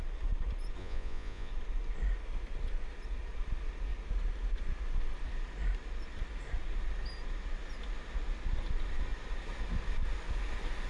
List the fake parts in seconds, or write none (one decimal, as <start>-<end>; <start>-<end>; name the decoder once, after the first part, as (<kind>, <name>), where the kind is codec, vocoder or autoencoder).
0.8-1.5 (vocoder, Vocos)